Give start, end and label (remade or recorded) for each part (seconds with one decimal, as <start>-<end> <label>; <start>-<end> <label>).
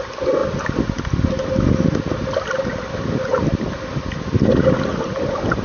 0.0-5.6 recorded